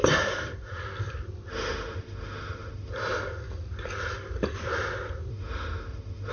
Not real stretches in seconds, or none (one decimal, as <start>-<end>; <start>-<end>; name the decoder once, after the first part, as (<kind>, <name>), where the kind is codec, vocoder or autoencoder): 1.5-2.9 (autoencoder, DAC-VAE); 5.3-6.3